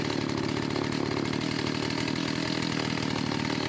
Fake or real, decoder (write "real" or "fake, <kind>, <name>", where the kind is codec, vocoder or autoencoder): real